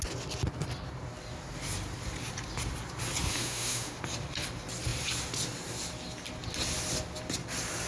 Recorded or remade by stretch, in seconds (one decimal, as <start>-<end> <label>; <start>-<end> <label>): 0.0-3.3 recorded; 3.3-4.0 remade; 4.0-7.9 recorded